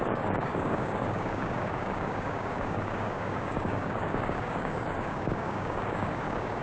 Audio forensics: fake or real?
fake